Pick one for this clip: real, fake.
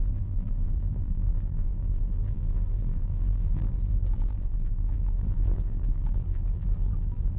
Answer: fake